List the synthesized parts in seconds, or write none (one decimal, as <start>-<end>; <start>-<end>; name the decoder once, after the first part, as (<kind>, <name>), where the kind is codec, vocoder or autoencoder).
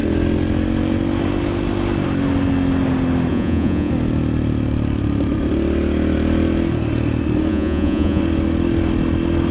3.3-3.9 (vocoder, Vocos); 7.5-8.2